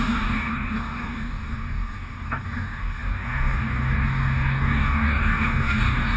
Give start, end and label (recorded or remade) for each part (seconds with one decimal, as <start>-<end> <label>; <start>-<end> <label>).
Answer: 0.0-6.2 remade